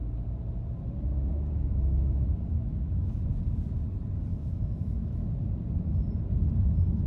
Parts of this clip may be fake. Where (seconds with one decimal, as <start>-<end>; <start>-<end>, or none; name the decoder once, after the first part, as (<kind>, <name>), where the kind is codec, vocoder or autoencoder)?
1.3-3.2 (autoencoder, DAC-VAE); 4.3-5.2